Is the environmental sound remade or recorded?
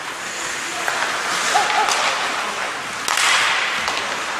recorded